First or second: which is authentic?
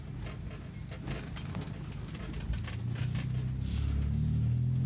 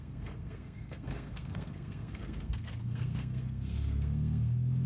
first